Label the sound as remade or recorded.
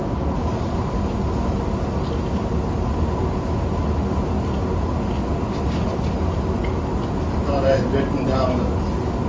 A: recorded